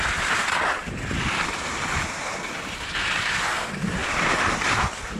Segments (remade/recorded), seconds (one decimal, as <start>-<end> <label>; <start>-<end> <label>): 0.0-5.2 recorded

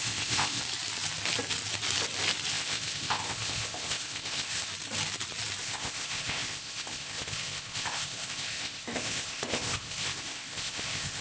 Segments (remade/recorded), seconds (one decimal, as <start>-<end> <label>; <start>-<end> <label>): 0.0-0.6 remade; 0.6-2.5 recorded; 2.5-4.7 remade; 4.7-5.6 recorded; 5.6-11.2 remade

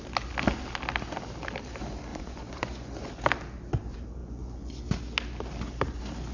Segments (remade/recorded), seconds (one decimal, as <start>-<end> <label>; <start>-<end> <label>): 0.0-2.1 recorded; 2.1-3.1 remade; 3.1-4.2 recorded; 4.2-4.8 remade; 4.8-6.3 recorded

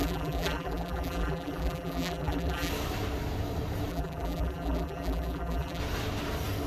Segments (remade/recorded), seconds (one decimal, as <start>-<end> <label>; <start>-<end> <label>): 0.0-2.7 remade; 2.7-3.9 recorded; 3.9-5.8 remade; 5.8-6.7 recorded

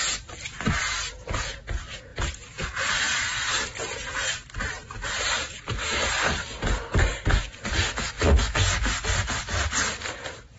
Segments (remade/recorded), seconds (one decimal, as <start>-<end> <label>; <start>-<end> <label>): 0.0-10.6 recorded

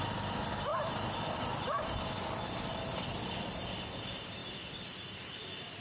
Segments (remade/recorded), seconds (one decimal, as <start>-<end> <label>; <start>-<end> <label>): 0.0-5.8 recorded